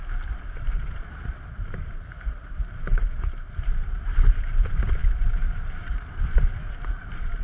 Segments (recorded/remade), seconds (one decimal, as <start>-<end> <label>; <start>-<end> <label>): 0.0-0.7 recorded; 0.7-7.4 remade